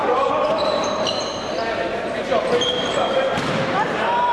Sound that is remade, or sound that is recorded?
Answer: remade